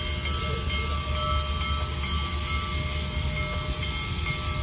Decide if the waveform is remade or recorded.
recorded